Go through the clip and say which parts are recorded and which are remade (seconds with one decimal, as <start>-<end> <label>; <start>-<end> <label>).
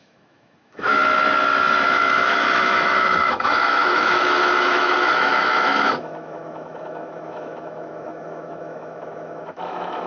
0.0-1.0 remade; 1.0-2.0 recorded; 2.0-10.1 remade